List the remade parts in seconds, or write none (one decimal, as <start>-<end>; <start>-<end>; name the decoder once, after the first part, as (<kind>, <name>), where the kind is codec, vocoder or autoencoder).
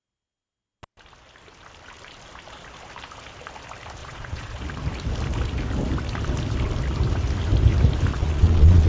4.0-4.6 (vocoder, Vocos); 8.1-8.9